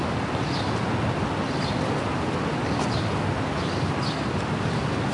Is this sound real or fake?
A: real